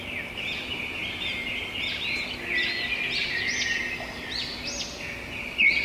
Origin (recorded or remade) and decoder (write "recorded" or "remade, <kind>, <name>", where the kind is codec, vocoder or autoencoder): recorded